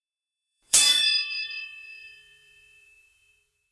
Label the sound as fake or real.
fake